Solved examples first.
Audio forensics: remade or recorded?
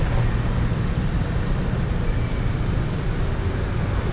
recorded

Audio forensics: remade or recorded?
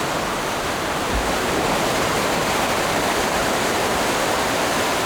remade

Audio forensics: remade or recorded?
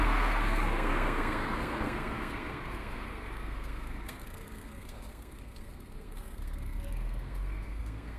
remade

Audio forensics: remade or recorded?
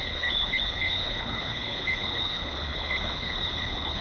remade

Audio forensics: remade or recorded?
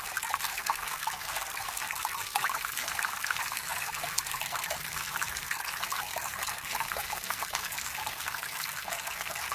remade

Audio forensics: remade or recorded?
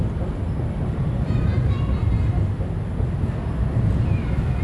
recorded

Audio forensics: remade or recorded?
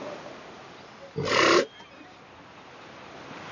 recorded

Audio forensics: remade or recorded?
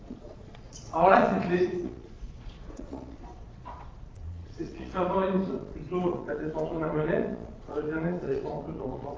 remade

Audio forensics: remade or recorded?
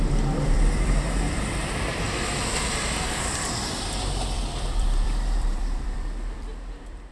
remade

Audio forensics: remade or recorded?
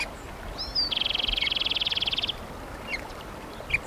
recorded